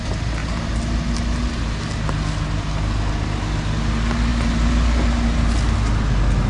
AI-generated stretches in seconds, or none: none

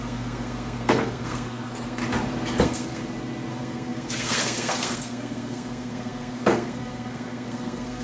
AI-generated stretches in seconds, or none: 0.0-2.0 (codec, SNAC); 2.6-3.0; 3.5-8.0

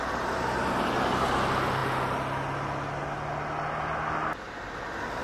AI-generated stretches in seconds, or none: none

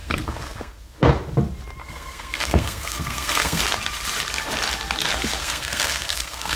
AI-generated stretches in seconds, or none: 0.0-1.1 (codec, SNAC); 1.8-3.6; 5.4-6.6